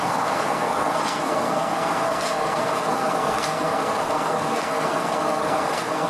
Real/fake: fake